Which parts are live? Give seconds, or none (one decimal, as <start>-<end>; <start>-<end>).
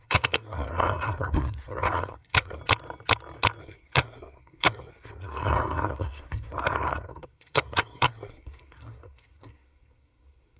2.6-3.6